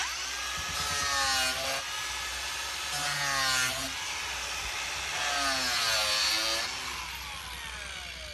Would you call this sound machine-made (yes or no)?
no